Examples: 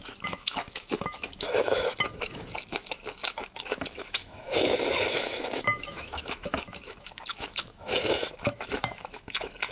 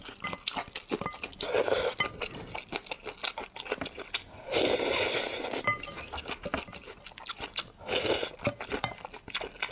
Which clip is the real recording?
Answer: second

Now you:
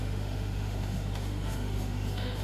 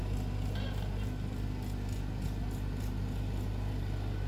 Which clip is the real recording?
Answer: second